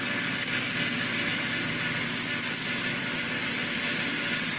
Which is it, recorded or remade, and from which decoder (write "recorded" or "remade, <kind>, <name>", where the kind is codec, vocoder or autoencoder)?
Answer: recorded